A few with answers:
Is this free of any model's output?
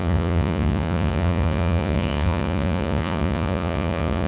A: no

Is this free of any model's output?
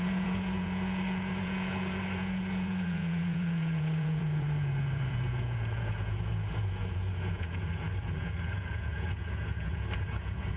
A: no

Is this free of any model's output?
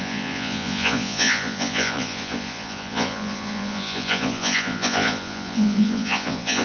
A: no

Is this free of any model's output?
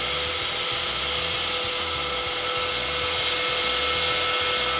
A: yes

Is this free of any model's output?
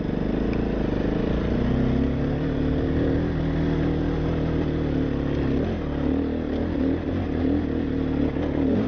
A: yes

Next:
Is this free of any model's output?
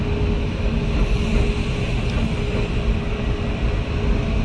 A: yes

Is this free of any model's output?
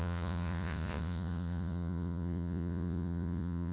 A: no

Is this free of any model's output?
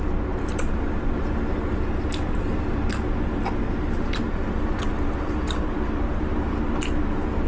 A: yes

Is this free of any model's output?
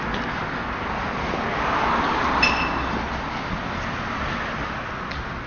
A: yes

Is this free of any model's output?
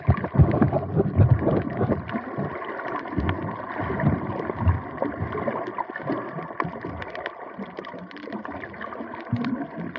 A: yes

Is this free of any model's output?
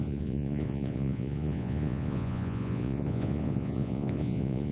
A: no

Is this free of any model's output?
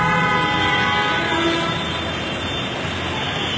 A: yes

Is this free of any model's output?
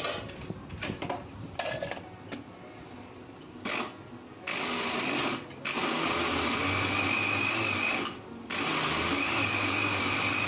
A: yes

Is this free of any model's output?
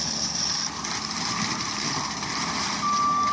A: yes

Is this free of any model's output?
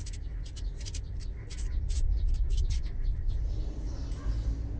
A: yes